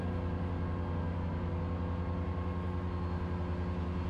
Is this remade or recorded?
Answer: recorded